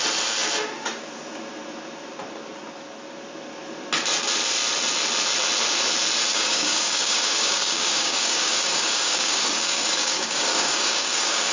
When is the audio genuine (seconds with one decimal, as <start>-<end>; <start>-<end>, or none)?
0.0-6.3